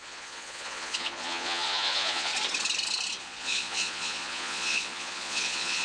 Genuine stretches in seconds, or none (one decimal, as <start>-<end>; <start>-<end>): 2.3-3.2